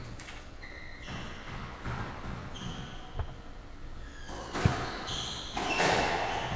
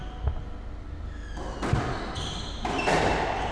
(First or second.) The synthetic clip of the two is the first